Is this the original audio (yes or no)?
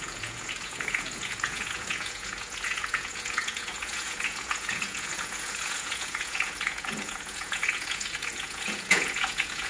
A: no